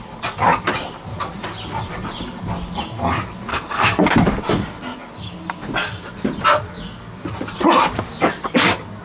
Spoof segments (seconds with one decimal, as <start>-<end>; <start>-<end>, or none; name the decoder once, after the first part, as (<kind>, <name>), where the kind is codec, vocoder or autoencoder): 3.5-4.1 (codec, SNAC)